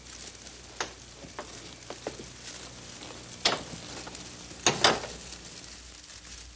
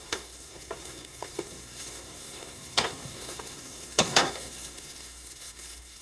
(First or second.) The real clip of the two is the first